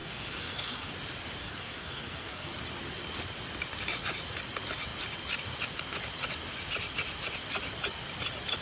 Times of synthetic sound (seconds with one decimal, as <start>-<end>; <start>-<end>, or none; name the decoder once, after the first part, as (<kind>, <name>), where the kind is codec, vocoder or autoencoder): 0.0-0.9 (codec, SNAC); 1.4-2.5